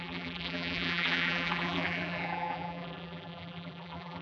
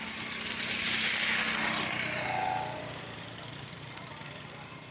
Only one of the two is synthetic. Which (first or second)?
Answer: first